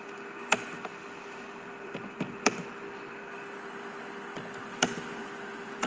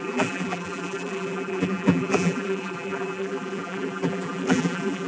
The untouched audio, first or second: first